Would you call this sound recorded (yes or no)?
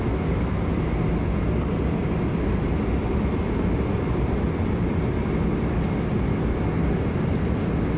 yes